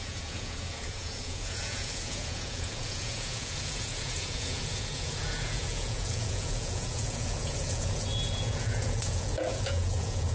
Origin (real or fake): fake